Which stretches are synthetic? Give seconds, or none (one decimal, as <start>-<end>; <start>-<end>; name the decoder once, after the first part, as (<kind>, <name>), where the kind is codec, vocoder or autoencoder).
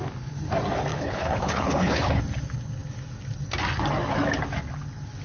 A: 0.9-2.2 (codec, HILCodec)